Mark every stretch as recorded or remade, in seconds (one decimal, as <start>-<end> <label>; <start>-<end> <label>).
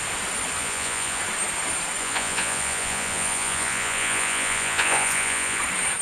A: 0.0-0.6 recorded; 0.6-1.2 remade; 1.2-2.0 recorded; 2.0-5.6 remade; 5.6-6.0 recorded